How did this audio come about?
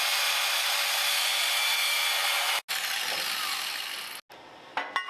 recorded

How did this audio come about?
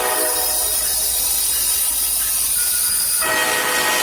recorded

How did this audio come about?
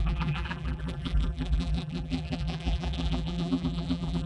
remade